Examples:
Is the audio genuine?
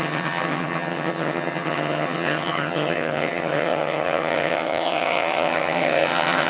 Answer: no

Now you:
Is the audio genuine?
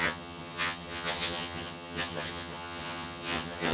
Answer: no